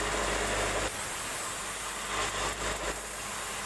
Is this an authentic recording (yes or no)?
yes